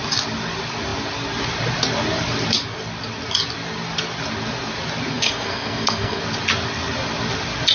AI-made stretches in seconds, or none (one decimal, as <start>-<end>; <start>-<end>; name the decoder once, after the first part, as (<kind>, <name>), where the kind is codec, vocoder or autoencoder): 5.1-6.2 (codec, SNAC)